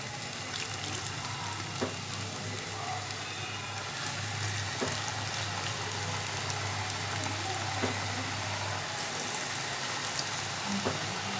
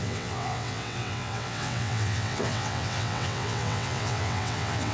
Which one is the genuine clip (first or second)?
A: first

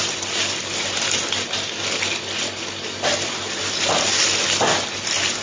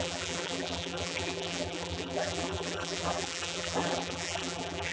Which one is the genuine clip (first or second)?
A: first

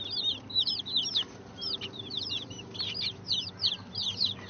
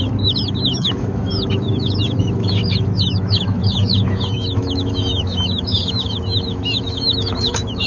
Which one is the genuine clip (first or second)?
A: first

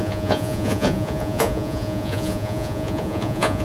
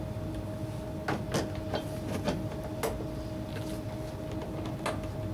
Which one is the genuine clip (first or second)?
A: second